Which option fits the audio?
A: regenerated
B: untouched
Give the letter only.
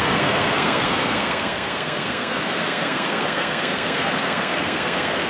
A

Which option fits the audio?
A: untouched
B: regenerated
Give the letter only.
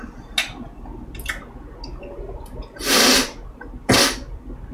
A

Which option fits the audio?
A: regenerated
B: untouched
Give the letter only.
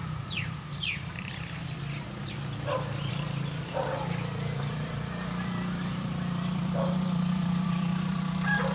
A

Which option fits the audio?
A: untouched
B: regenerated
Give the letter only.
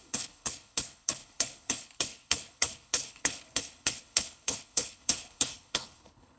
B